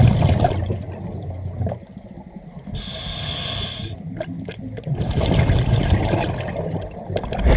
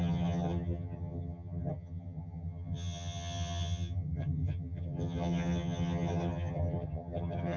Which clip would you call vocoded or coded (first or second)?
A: second